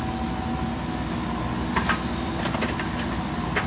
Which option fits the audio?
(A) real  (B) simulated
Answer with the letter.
A